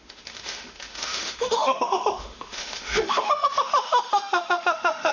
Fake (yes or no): yes